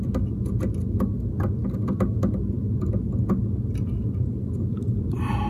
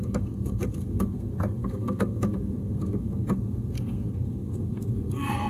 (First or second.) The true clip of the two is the first